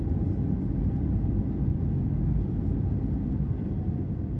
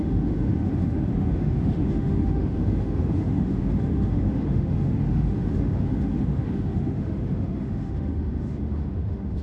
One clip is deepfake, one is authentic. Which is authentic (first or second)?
first